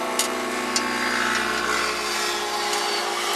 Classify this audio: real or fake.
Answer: real